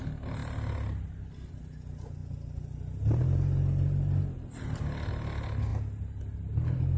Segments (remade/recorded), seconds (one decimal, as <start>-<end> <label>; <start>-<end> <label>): 0.0-7.0 recorded